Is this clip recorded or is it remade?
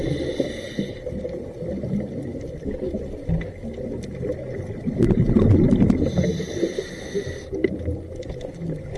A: recorded